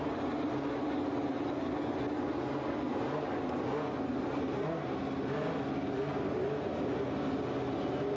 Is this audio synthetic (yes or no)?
no